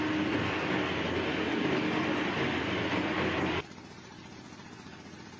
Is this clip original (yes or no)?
no